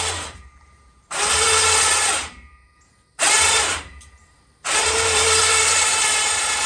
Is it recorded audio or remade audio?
remade